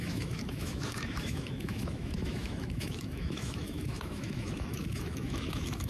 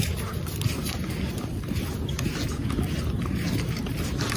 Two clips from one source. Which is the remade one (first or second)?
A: first